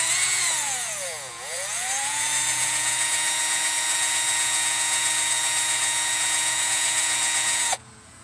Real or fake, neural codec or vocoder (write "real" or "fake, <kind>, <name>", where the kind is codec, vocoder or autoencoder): fake, vocoder, Vocos